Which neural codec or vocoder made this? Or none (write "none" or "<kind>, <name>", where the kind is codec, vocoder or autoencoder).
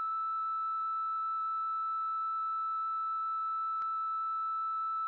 none